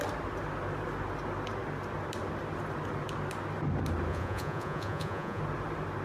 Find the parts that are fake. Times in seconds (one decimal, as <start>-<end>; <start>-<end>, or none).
4.1-5.4